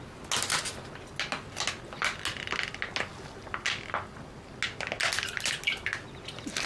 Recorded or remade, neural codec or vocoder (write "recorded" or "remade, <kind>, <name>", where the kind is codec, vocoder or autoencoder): recorded